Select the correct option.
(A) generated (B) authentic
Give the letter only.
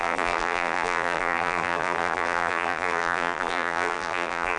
A